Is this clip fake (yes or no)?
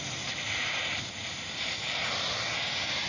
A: no